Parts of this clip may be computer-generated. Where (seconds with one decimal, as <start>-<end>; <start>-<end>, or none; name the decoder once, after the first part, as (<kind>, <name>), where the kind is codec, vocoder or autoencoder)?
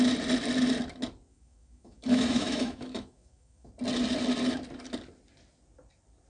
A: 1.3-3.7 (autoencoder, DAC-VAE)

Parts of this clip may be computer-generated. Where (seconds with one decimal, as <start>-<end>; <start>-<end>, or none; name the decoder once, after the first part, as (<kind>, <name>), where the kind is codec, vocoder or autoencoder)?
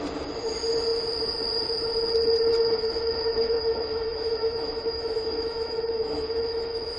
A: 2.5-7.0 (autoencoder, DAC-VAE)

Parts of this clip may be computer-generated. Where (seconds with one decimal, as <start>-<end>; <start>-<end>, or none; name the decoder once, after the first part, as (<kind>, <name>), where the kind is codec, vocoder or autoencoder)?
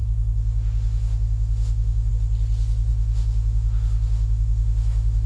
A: 0.0-2.1 (autoencoder, DAC-VAE); 2.9-5.3